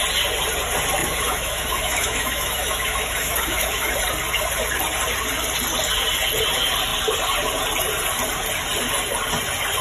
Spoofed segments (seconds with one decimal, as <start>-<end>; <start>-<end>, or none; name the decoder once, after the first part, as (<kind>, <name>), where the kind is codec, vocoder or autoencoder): 1.0-3.9 (autoencoder, DAC-VAE)